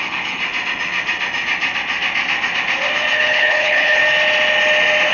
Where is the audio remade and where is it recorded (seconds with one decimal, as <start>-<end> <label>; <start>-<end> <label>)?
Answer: 0.0-0.4 remade; 0.4-3.1 recorded; 3.1-4.0 remade; 4.0-5.1 recorded